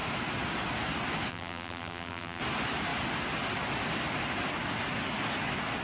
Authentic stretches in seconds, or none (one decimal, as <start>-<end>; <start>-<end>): 0.0-1.3; 2.4-5.8